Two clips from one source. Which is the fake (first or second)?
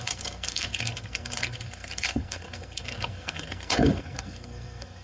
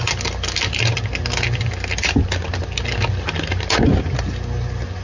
first